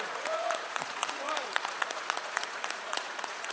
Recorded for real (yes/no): no